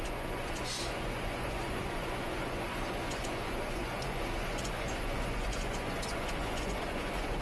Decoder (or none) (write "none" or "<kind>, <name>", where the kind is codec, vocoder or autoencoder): vocoder, Vocos